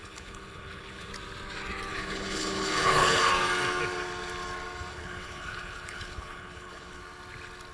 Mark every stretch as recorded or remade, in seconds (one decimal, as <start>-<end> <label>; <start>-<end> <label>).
0.0-1.1 remade; 1.1-1.9 recorded; 1.9-3.3 remade; 3.3-4.9 recorded; 4.9-7.0 remade; 7.0-7.7 recorded

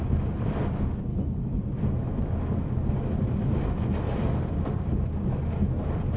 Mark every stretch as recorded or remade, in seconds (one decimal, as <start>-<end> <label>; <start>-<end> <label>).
0.0-1.1 recorded; 1.1-1.6 remade; 1.6-6.2 recorded

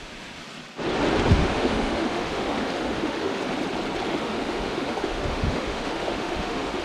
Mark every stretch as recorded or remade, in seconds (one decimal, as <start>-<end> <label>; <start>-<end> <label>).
0.0-0.4 remade; 0.4-1.3 recorded; 1.3-3.4 remade; 3.4-4.1 recorded; 4.1-6.8 remade

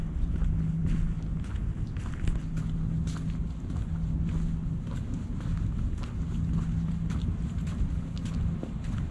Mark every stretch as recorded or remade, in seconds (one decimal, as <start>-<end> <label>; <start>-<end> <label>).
0.0-9.1 recorded